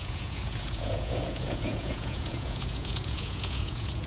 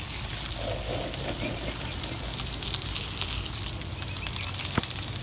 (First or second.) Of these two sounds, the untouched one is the second